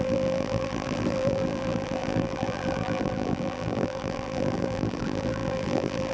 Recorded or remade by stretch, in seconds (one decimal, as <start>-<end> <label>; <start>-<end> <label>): 0.0-6.1 remade